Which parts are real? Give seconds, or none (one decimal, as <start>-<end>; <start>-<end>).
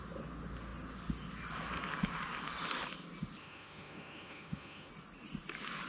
0.0-3.4; 4.9-5.9